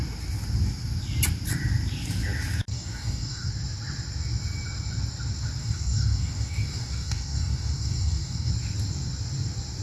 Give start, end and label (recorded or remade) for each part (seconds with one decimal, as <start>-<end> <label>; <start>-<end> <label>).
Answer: 0.0-2.7 recorded; 2.7-3.5 remade; 3.5-5.6 recorded; 5.6-8.5 remade; 8.5-9.8 recorded